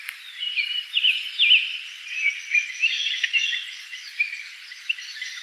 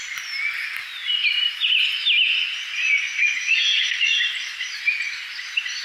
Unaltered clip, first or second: second